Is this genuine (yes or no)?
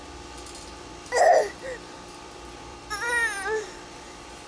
no